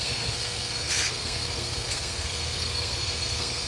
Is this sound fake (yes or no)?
yes